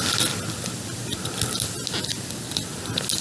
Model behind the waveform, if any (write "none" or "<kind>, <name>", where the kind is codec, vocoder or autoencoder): none